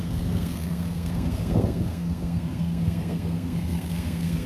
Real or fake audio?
fake